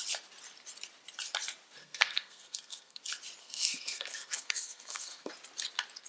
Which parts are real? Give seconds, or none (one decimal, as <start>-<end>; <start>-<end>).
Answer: 0.0-1.8; 3.0-3.4; 5.3-6.1